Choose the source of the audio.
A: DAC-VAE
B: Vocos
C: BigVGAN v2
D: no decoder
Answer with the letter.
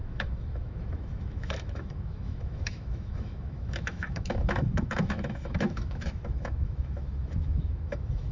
A